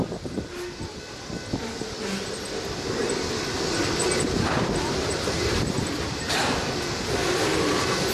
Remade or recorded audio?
recorded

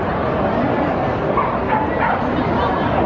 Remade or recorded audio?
recorded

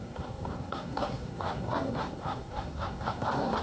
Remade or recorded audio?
remade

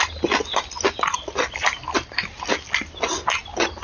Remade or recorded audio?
recorded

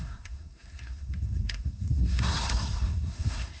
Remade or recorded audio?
remade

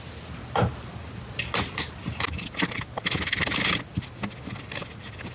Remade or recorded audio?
recorded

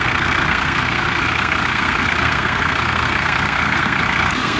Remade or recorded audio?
remade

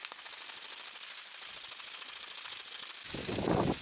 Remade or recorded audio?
recorded